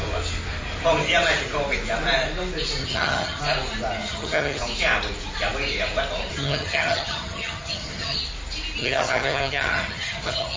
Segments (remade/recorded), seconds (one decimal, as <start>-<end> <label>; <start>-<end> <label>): 0.0-2.8 recorded; 2.8-3.4 remade; 3.4-4.0 recorded; 4.0-4.6 remade; 4.6-6.3 recorded; 6.3-8.2 remade; 8.2-8.8 recorded; 8.8-10.6 remade